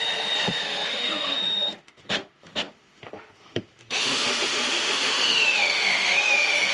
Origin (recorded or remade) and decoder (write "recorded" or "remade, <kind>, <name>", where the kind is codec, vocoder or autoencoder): remade, autoencoder, DAC-VAE